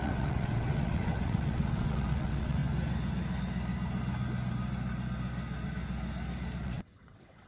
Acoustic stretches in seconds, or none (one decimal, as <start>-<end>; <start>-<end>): 2.6-6.6